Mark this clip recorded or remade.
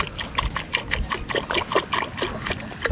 recorded